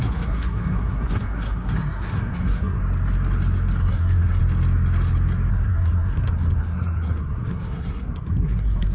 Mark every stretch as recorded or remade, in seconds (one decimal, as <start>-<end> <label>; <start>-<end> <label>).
0.0-2.8 remade; 2.8-3.8 recorded; 3.8-4.4 remade; 4.4-5.5 recorded; 5.5-8.9 remade